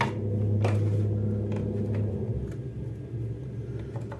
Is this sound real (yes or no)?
yes